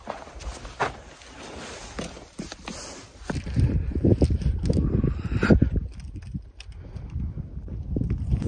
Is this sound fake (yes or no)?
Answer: no